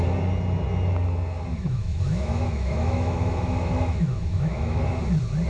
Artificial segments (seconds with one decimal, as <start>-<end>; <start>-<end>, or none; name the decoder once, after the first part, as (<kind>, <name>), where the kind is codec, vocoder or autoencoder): 1.5-4.8 (autoencoder, DAC-VAE)